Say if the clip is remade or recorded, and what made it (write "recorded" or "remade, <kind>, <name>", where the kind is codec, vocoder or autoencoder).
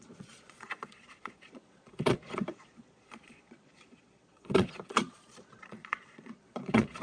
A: remade, vocoder, Vocos